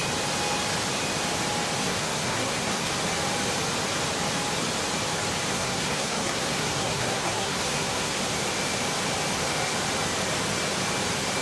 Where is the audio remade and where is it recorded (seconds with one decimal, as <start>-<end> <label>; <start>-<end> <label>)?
0.0-1.8 recorded; 1.8-2.9 remade; 2.9-5.5 recorded; 5.5-8.2 remade; 8.2-11.4 recorded